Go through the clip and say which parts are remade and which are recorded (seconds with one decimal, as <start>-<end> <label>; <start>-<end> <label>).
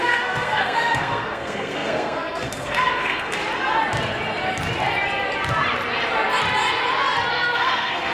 0.0-3.4 remade; 3.4-7.3 recorded; 7.3-8.1 remade